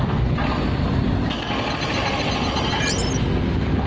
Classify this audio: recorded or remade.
recorded